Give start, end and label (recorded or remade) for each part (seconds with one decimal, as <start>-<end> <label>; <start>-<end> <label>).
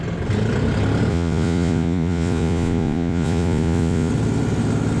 0.0-1.1 recorded; 1.1-4.1 remade; 4.1-5.0 recorded